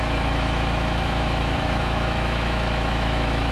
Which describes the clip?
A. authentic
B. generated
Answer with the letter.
B